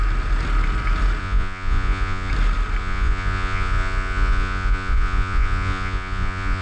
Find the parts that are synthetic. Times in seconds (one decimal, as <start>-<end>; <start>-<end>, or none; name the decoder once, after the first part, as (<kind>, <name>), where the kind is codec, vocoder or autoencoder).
1.2-2.3 (vocoder, Vocos); 2.8-6.6